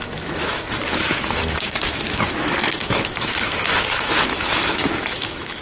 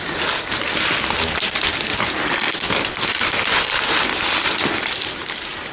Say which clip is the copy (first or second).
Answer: first